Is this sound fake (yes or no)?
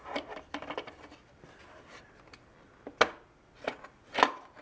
no